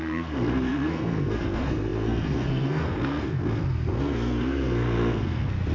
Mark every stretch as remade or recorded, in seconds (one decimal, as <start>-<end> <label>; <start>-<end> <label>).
0.0-5.7 remade